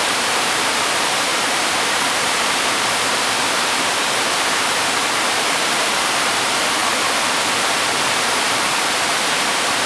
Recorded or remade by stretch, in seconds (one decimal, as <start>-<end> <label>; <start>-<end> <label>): 0.0-9.9 remade